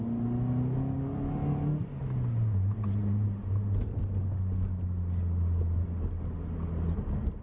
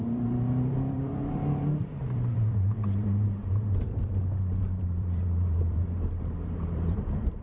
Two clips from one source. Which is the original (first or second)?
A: first